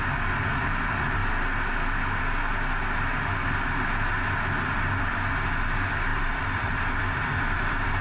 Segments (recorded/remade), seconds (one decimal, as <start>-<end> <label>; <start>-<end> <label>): 0.0-1.2 remade; 1.2-5.0 recorded; 5.0-8.0 remade

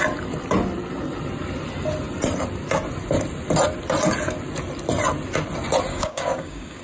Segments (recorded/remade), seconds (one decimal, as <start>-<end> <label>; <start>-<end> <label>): 0.0-5.9 recorded; 5.9-6.8 remade

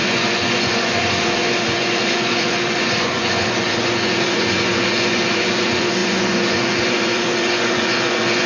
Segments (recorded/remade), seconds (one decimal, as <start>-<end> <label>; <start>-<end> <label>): 0.0-8.5 remade

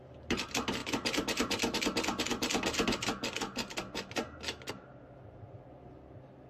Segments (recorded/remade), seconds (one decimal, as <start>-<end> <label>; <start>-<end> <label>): 0.0-6.5 recorded

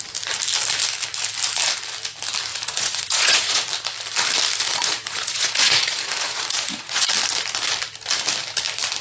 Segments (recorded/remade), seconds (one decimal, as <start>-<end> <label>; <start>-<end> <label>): 0.0-2.5 recorded; 2.5-3.6 remade; 3.6-4.7 recorded; 4.7-7.1 remade; 7.1-9.0 recorded

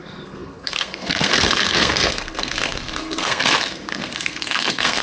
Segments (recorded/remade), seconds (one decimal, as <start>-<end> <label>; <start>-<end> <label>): 0.0-5.0 remade

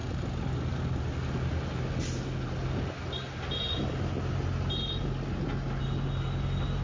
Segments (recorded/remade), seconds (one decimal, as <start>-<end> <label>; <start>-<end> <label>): 0.0-6.8 recorded

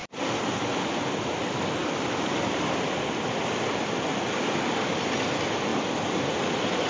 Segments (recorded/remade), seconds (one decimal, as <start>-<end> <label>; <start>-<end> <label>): 0.0-6.9 recorded